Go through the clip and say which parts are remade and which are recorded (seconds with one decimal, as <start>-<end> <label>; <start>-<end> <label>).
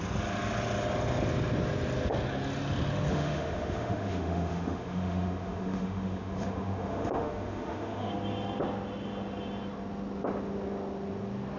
0.0-3.1 recorded; 3.1-8.1 remade; 8.1-11.6 recorded